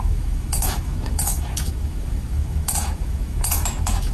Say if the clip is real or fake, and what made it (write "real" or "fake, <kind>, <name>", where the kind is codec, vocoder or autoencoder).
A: fake, autoencoder, DAC-VAE